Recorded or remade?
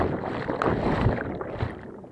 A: recorded